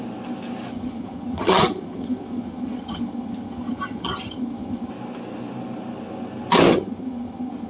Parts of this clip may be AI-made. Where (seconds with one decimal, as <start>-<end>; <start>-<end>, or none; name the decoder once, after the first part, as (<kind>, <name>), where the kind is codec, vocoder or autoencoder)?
0.7-4.9 (vocoder, HiFi-GAN); 6.7-7.7